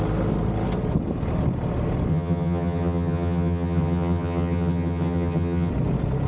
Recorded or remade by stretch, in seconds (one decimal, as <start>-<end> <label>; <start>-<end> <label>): 0.0-2.1 recorded; 2.1-5.7 remade; 5.7-6.3 recorded